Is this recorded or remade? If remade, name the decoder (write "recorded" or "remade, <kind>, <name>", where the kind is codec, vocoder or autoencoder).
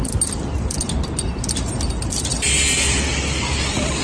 recorded